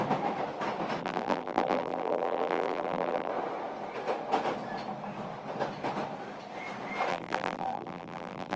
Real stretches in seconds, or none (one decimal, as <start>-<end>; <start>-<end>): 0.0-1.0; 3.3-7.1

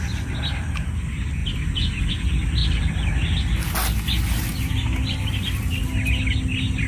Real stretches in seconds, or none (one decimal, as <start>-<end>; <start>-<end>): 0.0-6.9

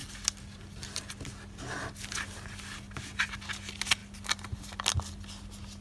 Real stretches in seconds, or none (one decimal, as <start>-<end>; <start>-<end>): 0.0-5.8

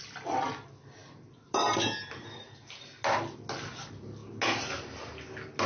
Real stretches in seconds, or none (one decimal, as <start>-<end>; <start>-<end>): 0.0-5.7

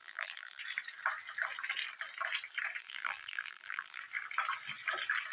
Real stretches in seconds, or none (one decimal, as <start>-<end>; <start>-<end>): 0.6-2.8; 4.0-5.3

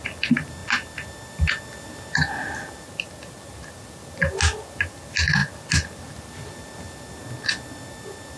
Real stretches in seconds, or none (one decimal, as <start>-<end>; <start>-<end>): 0.0-8.4